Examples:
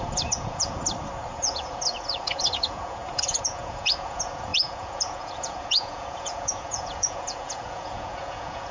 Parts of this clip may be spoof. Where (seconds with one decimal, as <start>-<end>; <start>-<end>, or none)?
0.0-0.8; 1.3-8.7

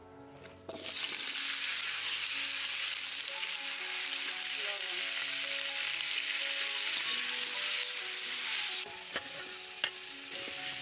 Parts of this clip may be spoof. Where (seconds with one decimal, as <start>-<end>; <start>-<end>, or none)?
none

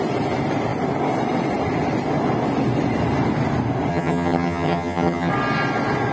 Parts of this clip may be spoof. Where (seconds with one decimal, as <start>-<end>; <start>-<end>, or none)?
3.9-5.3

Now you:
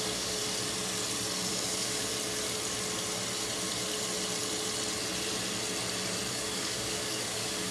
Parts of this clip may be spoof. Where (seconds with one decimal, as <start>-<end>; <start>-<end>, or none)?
0.0-0.4; 1.5-2.1; 6.3-7.7

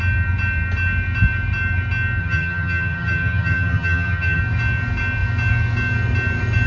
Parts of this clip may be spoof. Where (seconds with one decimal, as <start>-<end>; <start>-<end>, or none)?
2.2-4.4

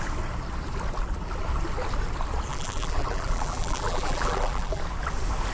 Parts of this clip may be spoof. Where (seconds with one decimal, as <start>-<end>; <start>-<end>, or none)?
2.5-4.8